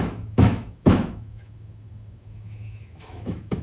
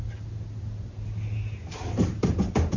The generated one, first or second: first